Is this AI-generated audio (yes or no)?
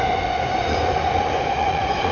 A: yes